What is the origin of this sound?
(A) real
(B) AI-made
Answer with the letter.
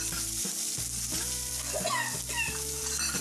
A